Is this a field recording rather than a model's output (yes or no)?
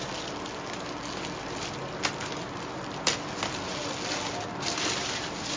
yes